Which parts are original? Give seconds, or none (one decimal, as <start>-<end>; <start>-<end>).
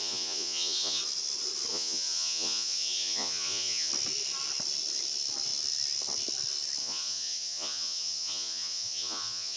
1.0-1.7; 3.9-6.8